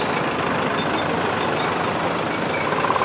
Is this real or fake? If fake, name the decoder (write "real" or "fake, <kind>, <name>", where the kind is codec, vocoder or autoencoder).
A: real